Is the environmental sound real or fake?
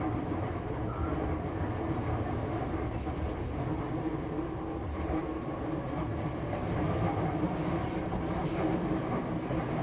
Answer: real